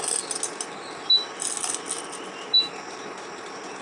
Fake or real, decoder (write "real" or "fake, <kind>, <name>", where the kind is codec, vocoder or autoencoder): real